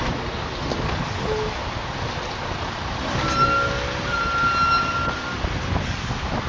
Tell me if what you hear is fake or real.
real